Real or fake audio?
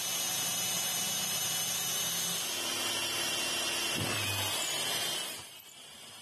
real